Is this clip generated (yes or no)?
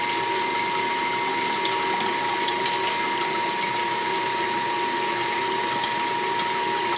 no